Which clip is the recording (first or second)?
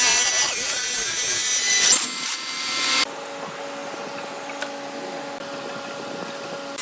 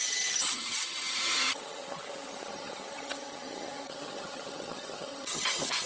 first